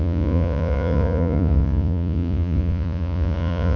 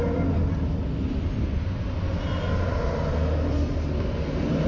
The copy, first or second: first